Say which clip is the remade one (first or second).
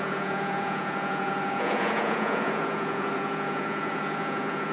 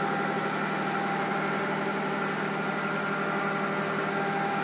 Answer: first